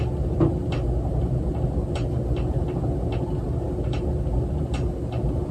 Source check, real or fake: real